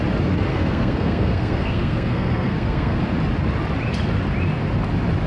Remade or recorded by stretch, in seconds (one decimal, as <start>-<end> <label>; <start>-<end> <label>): 0.0-0.5 recorded; 0.5-3.0 remade; 3.0-5.3 recorded